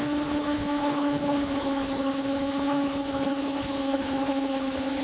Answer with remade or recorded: remade